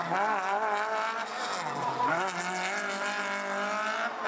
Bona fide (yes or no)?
yes